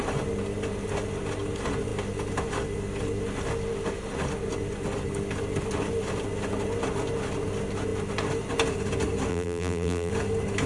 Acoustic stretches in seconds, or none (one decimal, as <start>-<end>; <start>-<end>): 0.0-9.3; 10.1-10.7